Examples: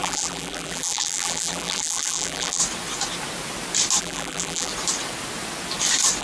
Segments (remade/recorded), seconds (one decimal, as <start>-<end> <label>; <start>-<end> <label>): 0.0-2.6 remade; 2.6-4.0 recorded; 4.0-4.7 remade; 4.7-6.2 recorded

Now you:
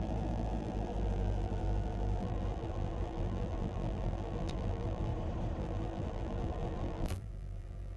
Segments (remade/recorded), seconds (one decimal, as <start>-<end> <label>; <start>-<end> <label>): 0.0-5.1 remade; 5.1-5.6 recorded; 5.6-8.0 remade

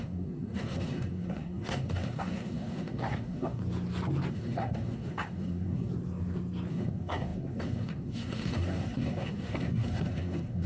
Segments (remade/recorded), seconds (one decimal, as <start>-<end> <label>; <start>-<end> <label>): 0.0-3.6 remade; 3.6-4.3 recorded; 4.3-5.9 remade; 5.9-6.7 recorded; 6.7-10.7 remade

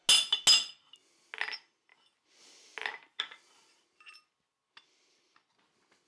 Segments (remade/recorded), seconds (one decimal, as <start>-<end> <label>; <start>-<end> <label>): 0.0-6.1 recorded

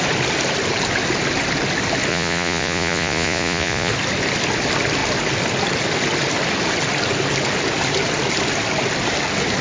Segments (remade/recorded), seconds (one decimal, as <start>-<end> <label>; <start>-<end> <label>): 0.0-2.1 recorded; 2.1-3.9 remade; 3.9-9.6 recorded

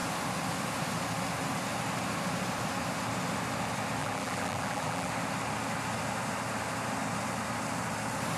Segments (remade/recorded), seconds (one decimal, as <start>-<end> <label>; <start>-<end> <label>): 0.0-4.0 recorded; 4.0-5.1 remade; 5.1-8.4 recorded